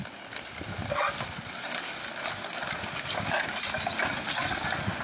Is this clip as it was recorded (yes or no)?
yes